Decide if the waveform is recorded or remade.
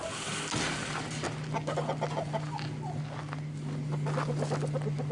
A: recorded